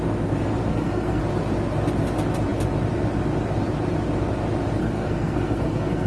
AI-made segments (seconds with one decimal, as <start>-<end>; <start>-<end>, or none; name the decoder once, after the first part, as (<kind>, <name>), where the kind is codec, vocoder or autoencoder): 0.7-1.2 (codec, SNAC); 4.8-6.1